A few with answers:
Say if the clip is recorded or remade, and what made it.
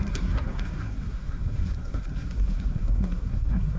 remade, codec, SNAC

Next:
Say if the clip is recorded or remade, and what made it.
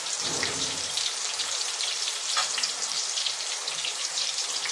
remade, vocoder, BigVGAN v2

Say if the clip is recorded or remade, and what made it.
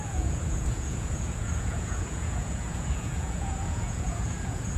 remade, vocoder, Vocos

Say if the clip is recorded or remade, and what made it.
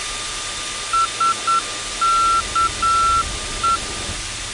recorded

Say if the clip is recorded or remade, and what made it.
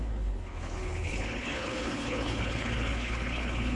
remade, codec, HILCodec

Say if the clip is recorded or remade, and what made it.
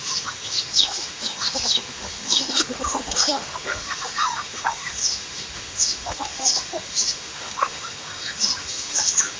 remade, autoencoder, DAC-VAE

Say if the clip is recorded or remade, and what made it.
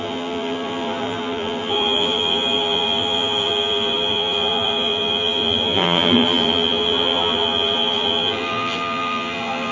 remade, vocoder, BigVGAN v2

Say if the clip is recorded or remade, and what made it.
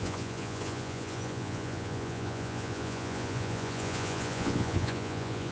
remade, vocoder, Vocos